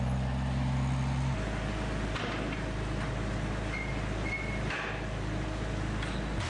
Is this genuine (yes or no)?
yes